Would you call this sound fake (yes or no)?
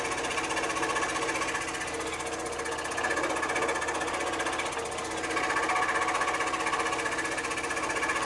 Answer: no